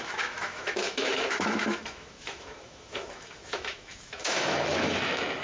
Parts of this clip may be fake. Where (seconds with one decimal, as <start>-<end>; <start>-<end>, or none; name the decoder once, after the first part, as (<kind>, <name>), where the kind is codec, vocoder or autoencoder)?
0.0-5.4 (autoencoder, DAC-VAE)